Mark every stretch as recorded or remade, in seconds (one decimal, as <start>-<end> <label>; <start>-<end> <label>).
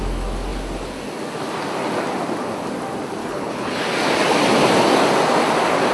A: 0.0-3.2 recorded; 3.2-3.7 remade; 3.7-5.9 recorded